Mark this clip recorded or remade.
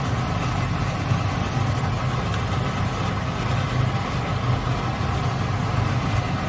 recorded